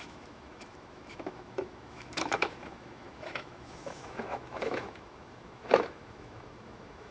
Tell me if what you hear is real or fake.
fake